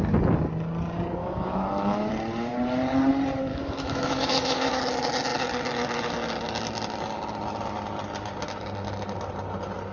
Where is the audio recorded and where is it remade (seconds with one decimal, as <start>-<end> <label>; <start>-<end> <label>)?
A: 0.0-1.2 recorded; 1.2-2.1 remade; 2.1-3.5 recorded; 3.5-4.8 remade; 4.8-9.9 recorded